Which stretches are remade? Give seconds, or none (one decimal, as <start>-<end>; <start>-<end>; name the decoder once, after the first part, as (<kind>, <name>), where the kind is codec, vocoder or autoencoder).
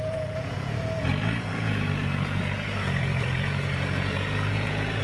0.0-5.0 (vocoder, Vocos)